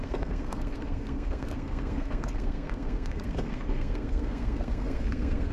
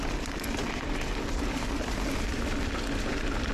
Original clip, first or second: second